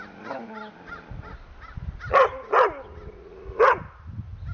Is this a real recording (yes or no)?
yes